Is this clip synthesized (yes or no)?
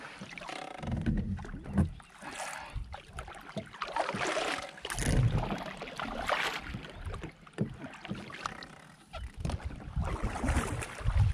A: no